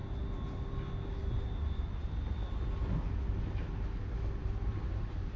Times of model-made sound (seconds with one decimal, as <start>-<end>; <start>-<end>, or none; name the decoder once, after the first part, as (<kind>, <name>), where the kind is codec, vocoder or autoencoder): 4.4-5.4 (vocoder, BigVGAN v2)